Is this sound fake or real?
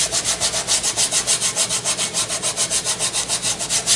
real